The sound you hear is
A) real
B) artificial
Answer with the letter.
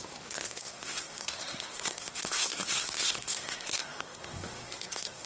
B